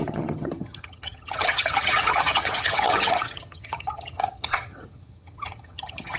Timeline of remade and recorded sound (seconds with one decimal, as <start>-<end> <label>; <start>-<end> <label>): 0.0-6.2 remade